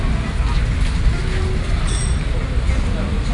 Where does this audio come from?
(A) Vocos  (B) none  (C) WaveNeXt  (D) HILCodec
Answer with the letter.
B